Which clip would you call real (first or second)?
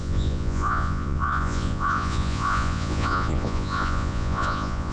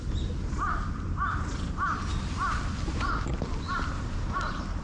second